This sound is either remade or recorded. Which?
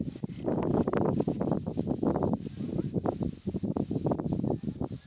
recorded